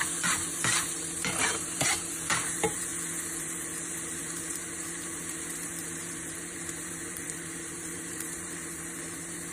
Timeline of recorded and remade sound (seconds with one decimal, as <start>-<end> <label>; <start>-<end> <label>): 0.0-9.5 remade